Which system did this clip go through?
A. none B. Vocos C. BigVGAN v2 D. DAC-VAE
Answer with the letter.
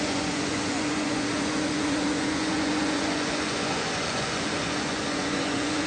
B